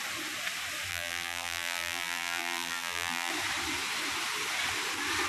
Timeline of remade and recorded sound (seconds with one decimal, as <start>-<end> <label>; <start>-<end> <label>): 0.0-0.9 recorded; 0.9-3.3 remade; 3.3-5.3 recorded